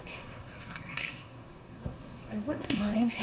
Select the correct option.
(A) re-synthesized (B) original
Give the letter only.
A